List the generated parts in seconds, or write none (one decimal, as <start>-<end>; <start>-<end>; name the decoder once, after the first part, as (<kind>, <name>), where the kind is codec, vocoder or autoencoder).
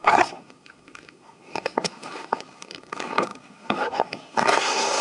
0.0-5.0 (codec, SNAC)